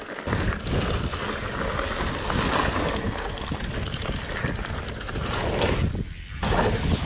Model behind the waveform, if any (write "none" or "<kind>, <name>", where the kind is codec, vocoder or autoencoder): none